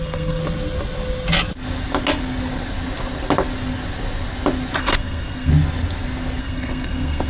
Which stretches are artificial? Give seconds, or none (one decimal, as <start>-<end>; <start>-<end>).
0.0-0.4; 4.8-5.5; 6.4-7.3